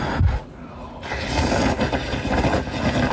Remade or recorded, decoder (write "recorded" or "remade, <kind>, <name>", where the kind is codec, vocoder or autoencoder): recorded